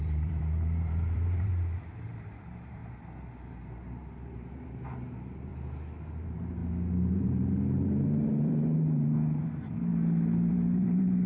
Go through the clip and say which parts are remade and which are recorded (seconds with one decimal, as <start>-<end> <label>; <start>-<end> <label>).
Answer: 0.0-2.8 remade; 2.8-3.5 recorded; 3.5-5.5 remade; 5.5-6.1 recorded; 6.1-6.6 remade; 6.6-7.1 recorded; 7.1-9.9 remade; 9.9-10.5 recorded; 10.5-11.3 remade

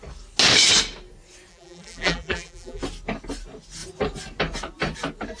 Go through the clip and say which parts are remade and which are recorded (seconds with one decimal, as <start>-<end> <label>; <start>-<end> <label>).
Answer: 0.0-1.5 recorded; 1.5-2.8 remade; 2.8-5.4 recorded

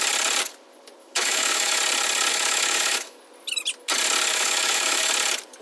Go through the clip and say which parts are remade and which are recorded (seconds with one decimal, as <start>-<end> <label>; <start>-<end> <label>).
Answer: 0.0-1.0 recorded; 1.0-1.8 remade; 1.8-2.3 recorded; 2.3-3.2 remade; 3.2-4.3 recorded; 4.3-5.1 remade; 5.1-5.6 recorded